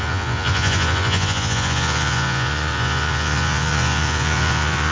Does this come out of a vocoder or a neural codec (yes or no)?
yes